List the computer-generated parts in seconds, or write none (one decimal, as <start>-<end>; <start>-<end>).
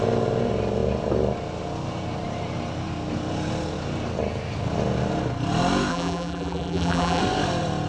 5.9-7.2